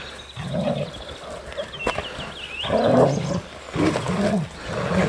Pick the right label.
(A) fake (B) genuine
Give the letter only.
B